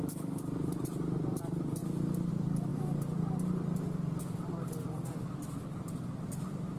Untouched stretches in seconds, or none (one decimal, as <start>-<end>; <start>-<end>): 1.8-2.3; 2.7-5.1